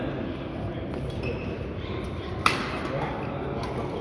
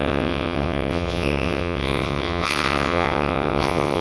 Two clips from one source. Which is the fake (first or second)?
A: second